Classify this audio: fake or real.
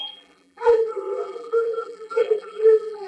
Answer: fake